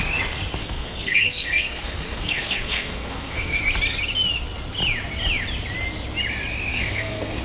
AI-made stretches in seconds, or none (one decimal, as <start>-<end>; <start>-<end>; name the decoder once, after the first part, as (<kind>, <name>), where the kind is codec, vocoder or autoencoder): 0.6-3.6 (codec, SNAC); 6.7-7.4